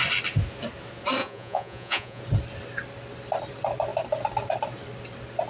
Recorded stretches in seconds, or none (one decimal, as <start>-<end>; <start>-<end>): 0.0-1.2; 2.2-5.5